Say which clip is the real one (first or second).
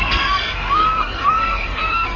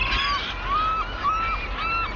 second